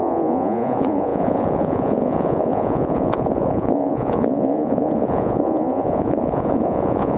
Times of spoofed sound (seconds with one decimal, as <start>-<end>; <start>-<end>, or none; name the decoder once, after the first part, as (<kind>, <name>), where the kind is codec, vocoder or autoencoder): 0.0-7.2 (vocoder, Vocos)